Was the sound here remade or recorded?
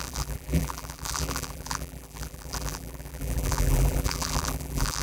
remade